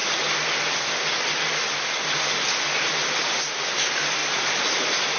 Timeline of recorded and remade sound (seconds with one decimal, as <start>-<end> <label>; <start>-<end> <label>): 0.0-4.2 recorded; 4.2-5.2 remade